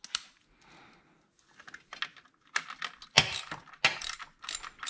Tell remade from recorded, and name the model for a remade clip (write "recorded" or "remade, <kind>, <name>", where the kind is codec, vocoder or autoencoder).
recorded